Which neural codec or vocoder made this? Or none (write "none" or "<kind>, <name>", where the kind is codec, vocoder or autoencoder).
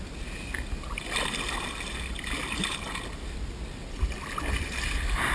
none